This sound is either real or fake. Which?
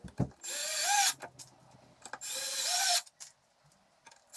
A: real